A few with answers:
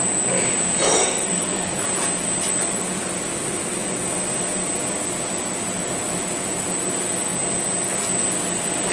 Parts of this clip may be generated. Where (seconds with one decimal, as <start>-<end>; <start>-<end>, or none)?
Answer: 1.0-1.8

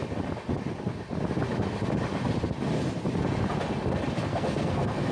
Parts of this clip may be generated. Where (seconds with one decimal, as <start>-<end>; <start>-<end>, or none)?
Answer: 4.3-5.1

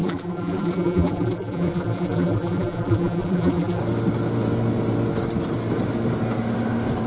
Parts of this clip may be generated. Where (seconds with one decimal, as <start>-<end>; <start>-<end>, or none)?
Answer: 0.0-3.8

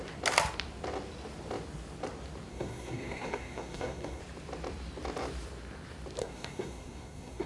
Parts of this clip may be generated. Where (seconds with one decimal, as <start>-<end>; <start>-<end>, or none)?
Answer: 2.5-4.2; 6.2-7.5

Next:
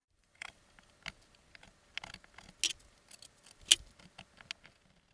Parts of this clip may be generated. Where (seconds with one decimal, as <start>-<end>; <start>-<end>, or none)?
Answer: 0.0-0.9